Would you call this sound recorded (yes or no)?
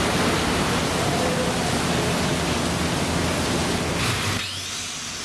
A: yes